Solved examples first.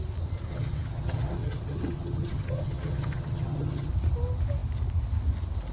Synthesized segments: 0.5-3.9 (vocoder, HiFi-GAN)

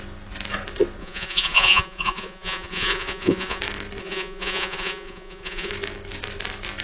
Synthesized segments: 1.0-3.6 (vocoder, Vocos); 4.0-5.7

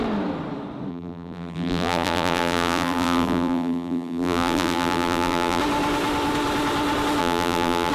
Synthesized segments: 0.9-5.6 (vocoder, BigVGAN v2); 7.2-7.9

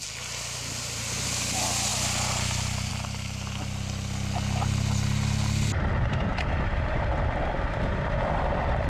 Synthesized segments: none